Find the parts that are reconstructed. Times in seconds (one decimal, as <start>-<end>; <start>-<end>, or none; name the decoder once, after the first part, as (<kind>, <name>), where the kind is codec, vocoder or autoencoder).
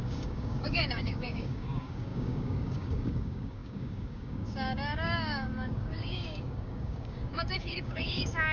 0.0-8.5 (codec, DAC)